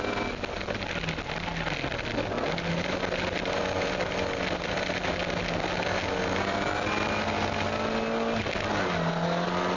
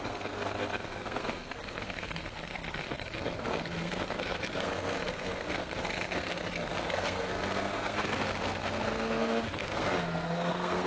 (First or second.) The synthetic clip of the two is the second